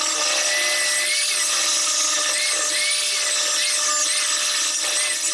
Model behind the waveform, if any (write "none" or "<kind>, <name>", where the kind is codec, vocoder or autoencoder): none